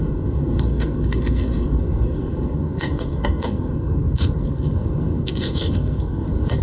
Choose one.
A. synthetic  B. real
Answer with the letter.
A